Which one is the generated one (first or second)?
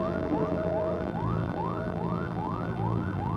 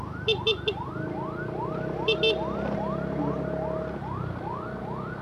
first